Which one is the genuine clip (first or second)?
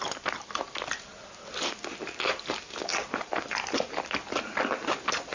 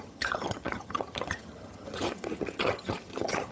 first